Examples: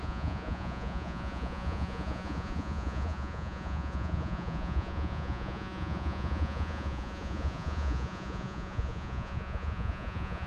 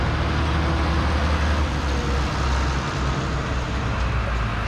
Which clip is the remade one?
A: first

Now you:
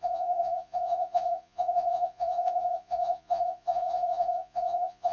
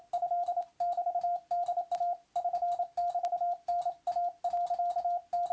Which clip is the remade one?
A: first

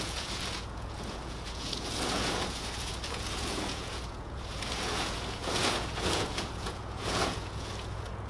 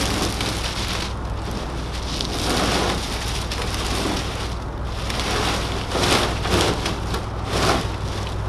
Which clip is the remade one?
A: first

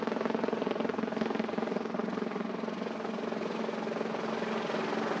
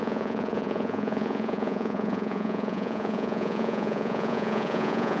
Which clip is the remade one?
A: second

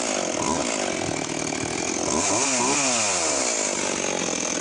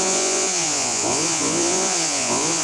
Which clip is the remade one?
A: second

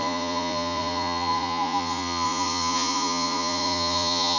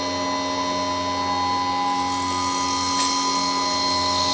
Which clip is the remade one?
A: first